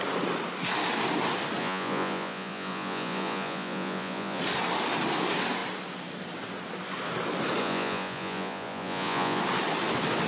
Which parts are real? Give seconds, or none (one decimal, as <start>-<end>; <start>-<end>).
0.0-1.6; 4.4-7.6; 9.4-10.3